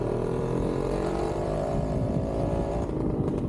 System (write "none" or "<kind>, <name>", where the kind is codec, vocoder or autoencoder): vocoder, BigVGAN v2